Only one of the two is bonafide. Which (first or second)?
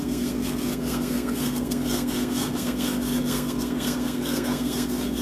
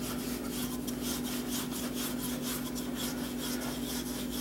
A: second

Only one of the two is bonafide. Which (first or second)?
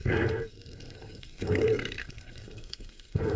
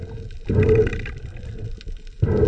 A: second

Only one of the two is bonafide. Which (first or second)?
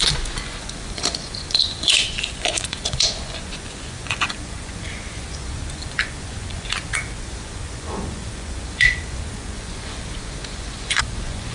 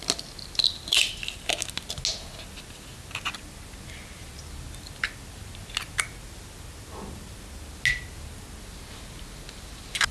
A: second